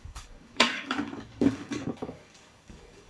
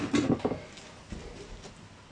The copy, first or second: first